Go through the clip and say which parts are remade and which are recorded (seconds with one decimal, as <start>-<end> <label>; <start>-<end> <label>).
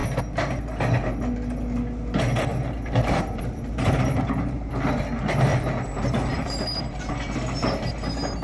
0.0-2.5 recorded; 2.5-4.7 remade; 4.7-5.5 recorded; 5.5-6.9 remade; 6.9-8.4 recorded